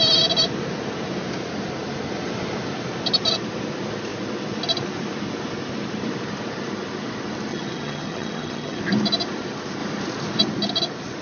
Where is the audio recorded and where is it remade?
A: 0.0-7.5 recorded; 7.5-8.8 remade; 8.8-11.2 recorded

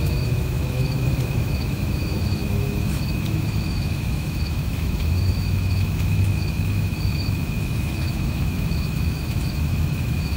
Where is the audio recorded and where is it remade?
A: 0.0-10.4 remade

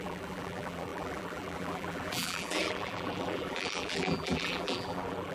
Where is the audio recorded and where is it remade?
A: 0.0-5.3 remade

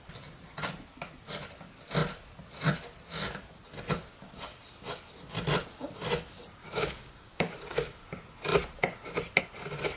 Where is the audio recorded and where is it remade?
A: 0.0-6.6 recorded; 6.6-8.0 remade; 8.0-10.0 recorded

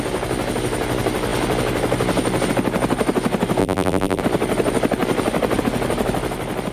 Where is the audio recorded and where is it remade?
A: 0.0-3.6 recorded; 3.6-4.2 remade; 4.2-6.7 recorded

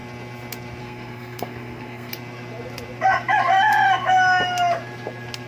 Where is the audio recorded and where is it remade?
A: 0.0-0.8 recorded; 0.8-2.1 remade; 2.1-5.5 recorded

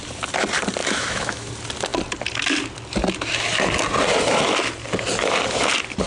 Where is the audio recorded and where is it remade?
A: 0.0-0.8 recorded; 0.8-1.5 remade; 1.5-6.1 recorded

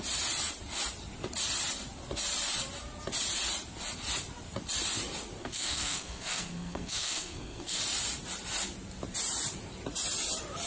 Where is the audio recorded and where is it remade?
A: 0.0-5.4 recorded; 5.4-7.8 remade; 7.8-10.7 recorded